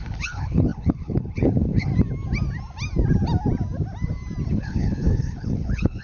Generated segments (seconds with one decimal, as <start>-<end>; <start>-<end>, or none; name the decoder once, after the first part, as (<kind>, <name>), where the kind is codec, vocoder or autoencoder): 0.0-1.9 (codec, HILCodec); 4.5-6.0